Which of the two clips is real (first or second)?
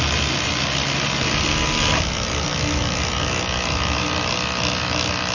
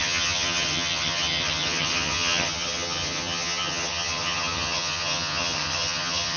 first